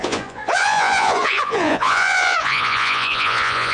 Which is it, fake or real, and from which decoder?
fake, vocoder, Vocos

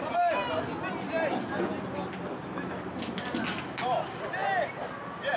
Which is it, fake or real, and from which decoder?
real